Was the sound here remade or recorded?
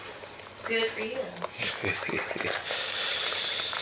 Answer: recorded